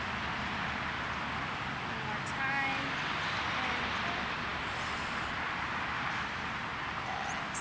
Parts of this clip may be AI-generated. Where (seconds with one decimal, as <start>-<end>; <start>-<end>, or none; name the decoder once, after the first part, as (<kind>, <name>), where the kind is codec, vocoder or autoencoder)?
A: none